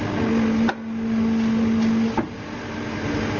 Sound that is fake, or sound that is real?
real